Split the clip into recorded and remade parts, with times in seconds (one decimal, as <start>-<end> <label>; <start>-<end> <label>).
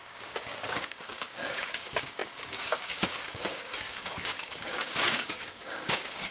0.0-6.3 remade